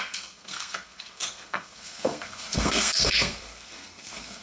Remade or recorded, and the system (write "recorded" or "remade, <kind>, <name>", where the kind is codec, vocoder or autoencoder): remade, codec, SNAC